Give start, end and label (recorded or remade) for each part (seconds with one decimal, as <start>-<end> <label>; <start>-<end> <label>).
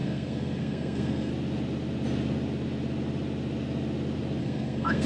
0.0-1.3 remade; 1.3-4.4 recorded; 4.4-5.1 remade